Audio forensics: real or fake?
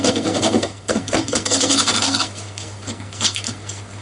fake